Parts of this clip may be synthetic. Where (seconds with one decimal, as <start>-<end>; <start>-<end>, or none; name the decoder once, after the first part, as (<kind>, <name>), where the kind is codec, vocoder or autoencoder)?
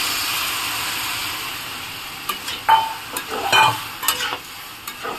none